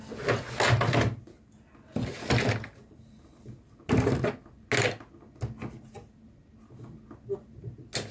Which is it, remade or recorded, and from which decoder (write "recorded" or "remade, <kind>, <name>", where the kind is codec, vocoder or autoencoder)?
recorded